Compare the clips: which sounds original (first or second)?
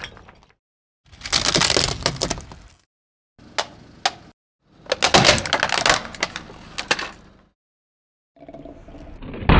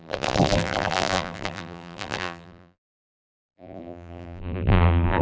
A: first